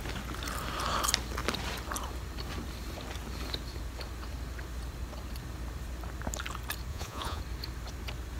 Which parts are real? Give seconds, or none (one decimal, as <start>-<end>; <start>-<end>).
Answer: 0.0-6.9; 7.4-8.4

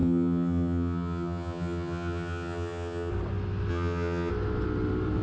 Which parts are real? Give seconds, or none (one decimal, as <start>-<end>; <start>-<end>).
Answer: 3.1-3.7; 4.3-5.2

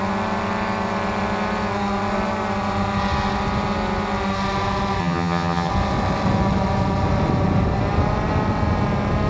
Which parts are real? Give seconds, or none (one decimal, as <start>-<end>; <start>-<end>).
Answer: 0.0-5.0; 5.7-9.3

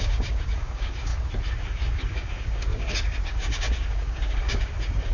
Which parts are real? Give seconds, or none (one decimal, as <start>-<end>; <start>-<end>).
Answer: 1.1-1.6

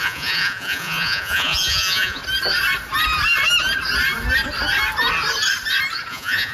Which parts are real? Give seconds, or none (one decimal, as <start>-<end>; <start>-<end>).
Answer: 2.2-6.1

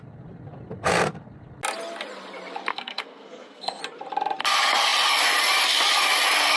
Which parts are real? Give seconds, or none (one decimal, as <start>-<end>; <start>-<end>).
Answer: 0.0-2.7; 3.8-6.6

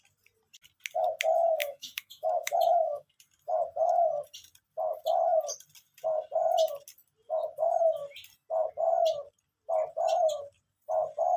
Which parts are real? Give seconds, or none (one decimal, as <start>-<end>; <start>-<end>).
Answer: 0.0-1.6; 3.1-11.4